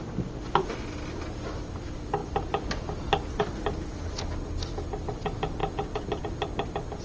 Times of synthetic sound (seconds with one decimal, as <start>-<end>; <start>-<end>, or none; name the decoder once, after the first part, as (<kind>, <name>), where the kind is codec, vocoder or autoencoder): 2.2-2.8 (vocoder, BigVGAN v2)